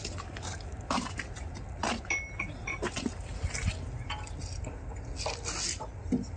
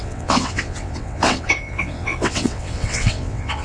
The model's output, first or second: second